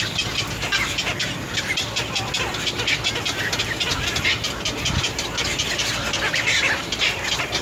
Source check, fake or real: real